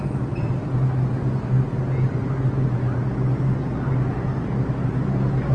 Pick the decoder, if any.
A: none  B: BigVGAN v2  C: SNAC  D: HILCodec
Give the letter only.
A